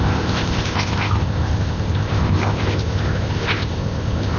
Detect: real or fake fake